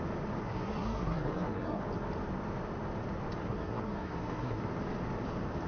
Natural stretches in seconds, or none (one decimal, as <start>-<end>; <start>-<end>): 0.0-0.4; 1.8-3.4; 4.6-5.7